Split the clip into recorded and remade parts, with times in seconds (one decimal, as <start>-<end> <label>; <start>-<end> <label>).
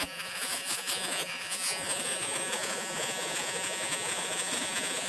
0.0-5.1 remade